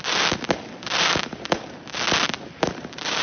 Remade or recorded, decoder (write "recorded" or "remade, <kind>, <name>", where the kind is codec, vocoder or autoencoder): remade, vocoder, BigVGAN v2